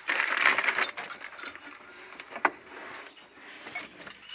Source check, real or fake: real